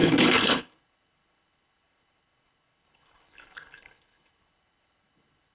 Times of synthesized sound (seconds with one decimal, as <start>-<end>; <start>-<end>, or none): 0.0-5.5